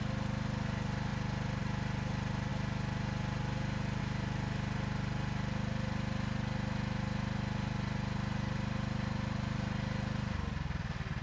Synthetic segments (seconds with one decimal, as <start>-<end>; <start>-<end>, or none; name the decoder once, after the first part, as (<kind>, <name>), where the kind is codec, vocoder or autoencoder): none

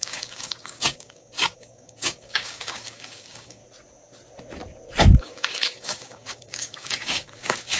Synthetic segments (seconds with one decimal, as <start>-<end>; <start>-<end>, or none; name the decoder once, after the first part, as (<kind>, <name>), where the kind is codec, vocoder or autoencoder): 0.0-3.6 (codec, DAC); 5.2-7.8

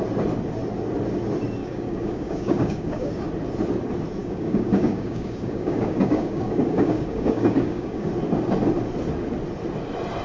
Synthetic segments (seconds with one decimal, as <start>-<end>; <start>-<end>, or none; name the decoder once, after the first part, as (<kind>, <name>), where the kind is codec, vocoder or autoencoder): 1.6-3.3 (codec, DAC); 4.2-8.1

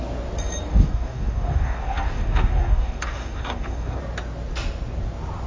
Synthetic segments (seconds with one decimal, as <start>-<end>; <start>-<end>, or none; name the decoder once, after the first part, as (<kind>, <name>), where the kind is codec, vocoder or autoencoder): 0.7-4.0 (codec, DAC)

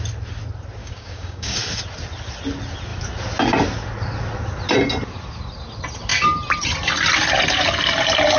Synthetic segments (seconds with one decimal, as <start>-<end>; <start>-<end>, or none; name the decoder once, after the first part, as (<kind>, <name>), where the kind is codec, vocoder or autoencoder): 0.8-1.6 (codec, DAC)

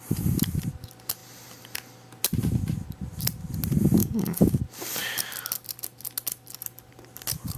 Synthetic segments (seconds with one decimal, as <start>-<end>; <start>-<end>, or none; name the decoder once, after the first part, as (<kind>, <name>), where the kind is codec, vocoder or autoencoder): 4.0-4.6 (codec, DAC)